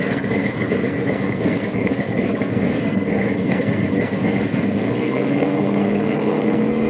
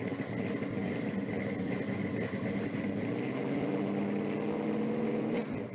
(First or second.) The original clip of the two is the second